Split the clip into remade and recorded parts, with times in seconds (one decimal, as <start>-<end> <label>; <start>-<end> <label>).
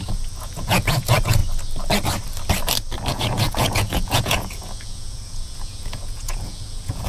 0.0-1.4 remade; 1.4-3.1 recorded; 3.1-7.1 remade